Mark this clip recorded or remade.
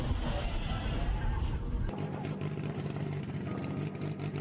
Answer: recorded